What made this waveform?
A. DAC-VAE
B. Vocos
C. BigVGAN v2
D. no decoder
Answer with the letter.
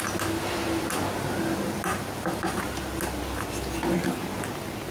D